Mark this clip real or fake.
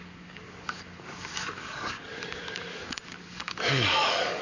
fake